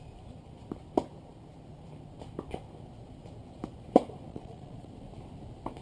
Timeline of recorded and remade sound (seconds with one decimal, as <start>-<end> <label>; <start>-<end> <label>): 0.0-4.3 recorded; 4.3-4.9 remade; 4.9-5.8 recorded